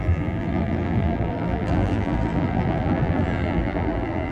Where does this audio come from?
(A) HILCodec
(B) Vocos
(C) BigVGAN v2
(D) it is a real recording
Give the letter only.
C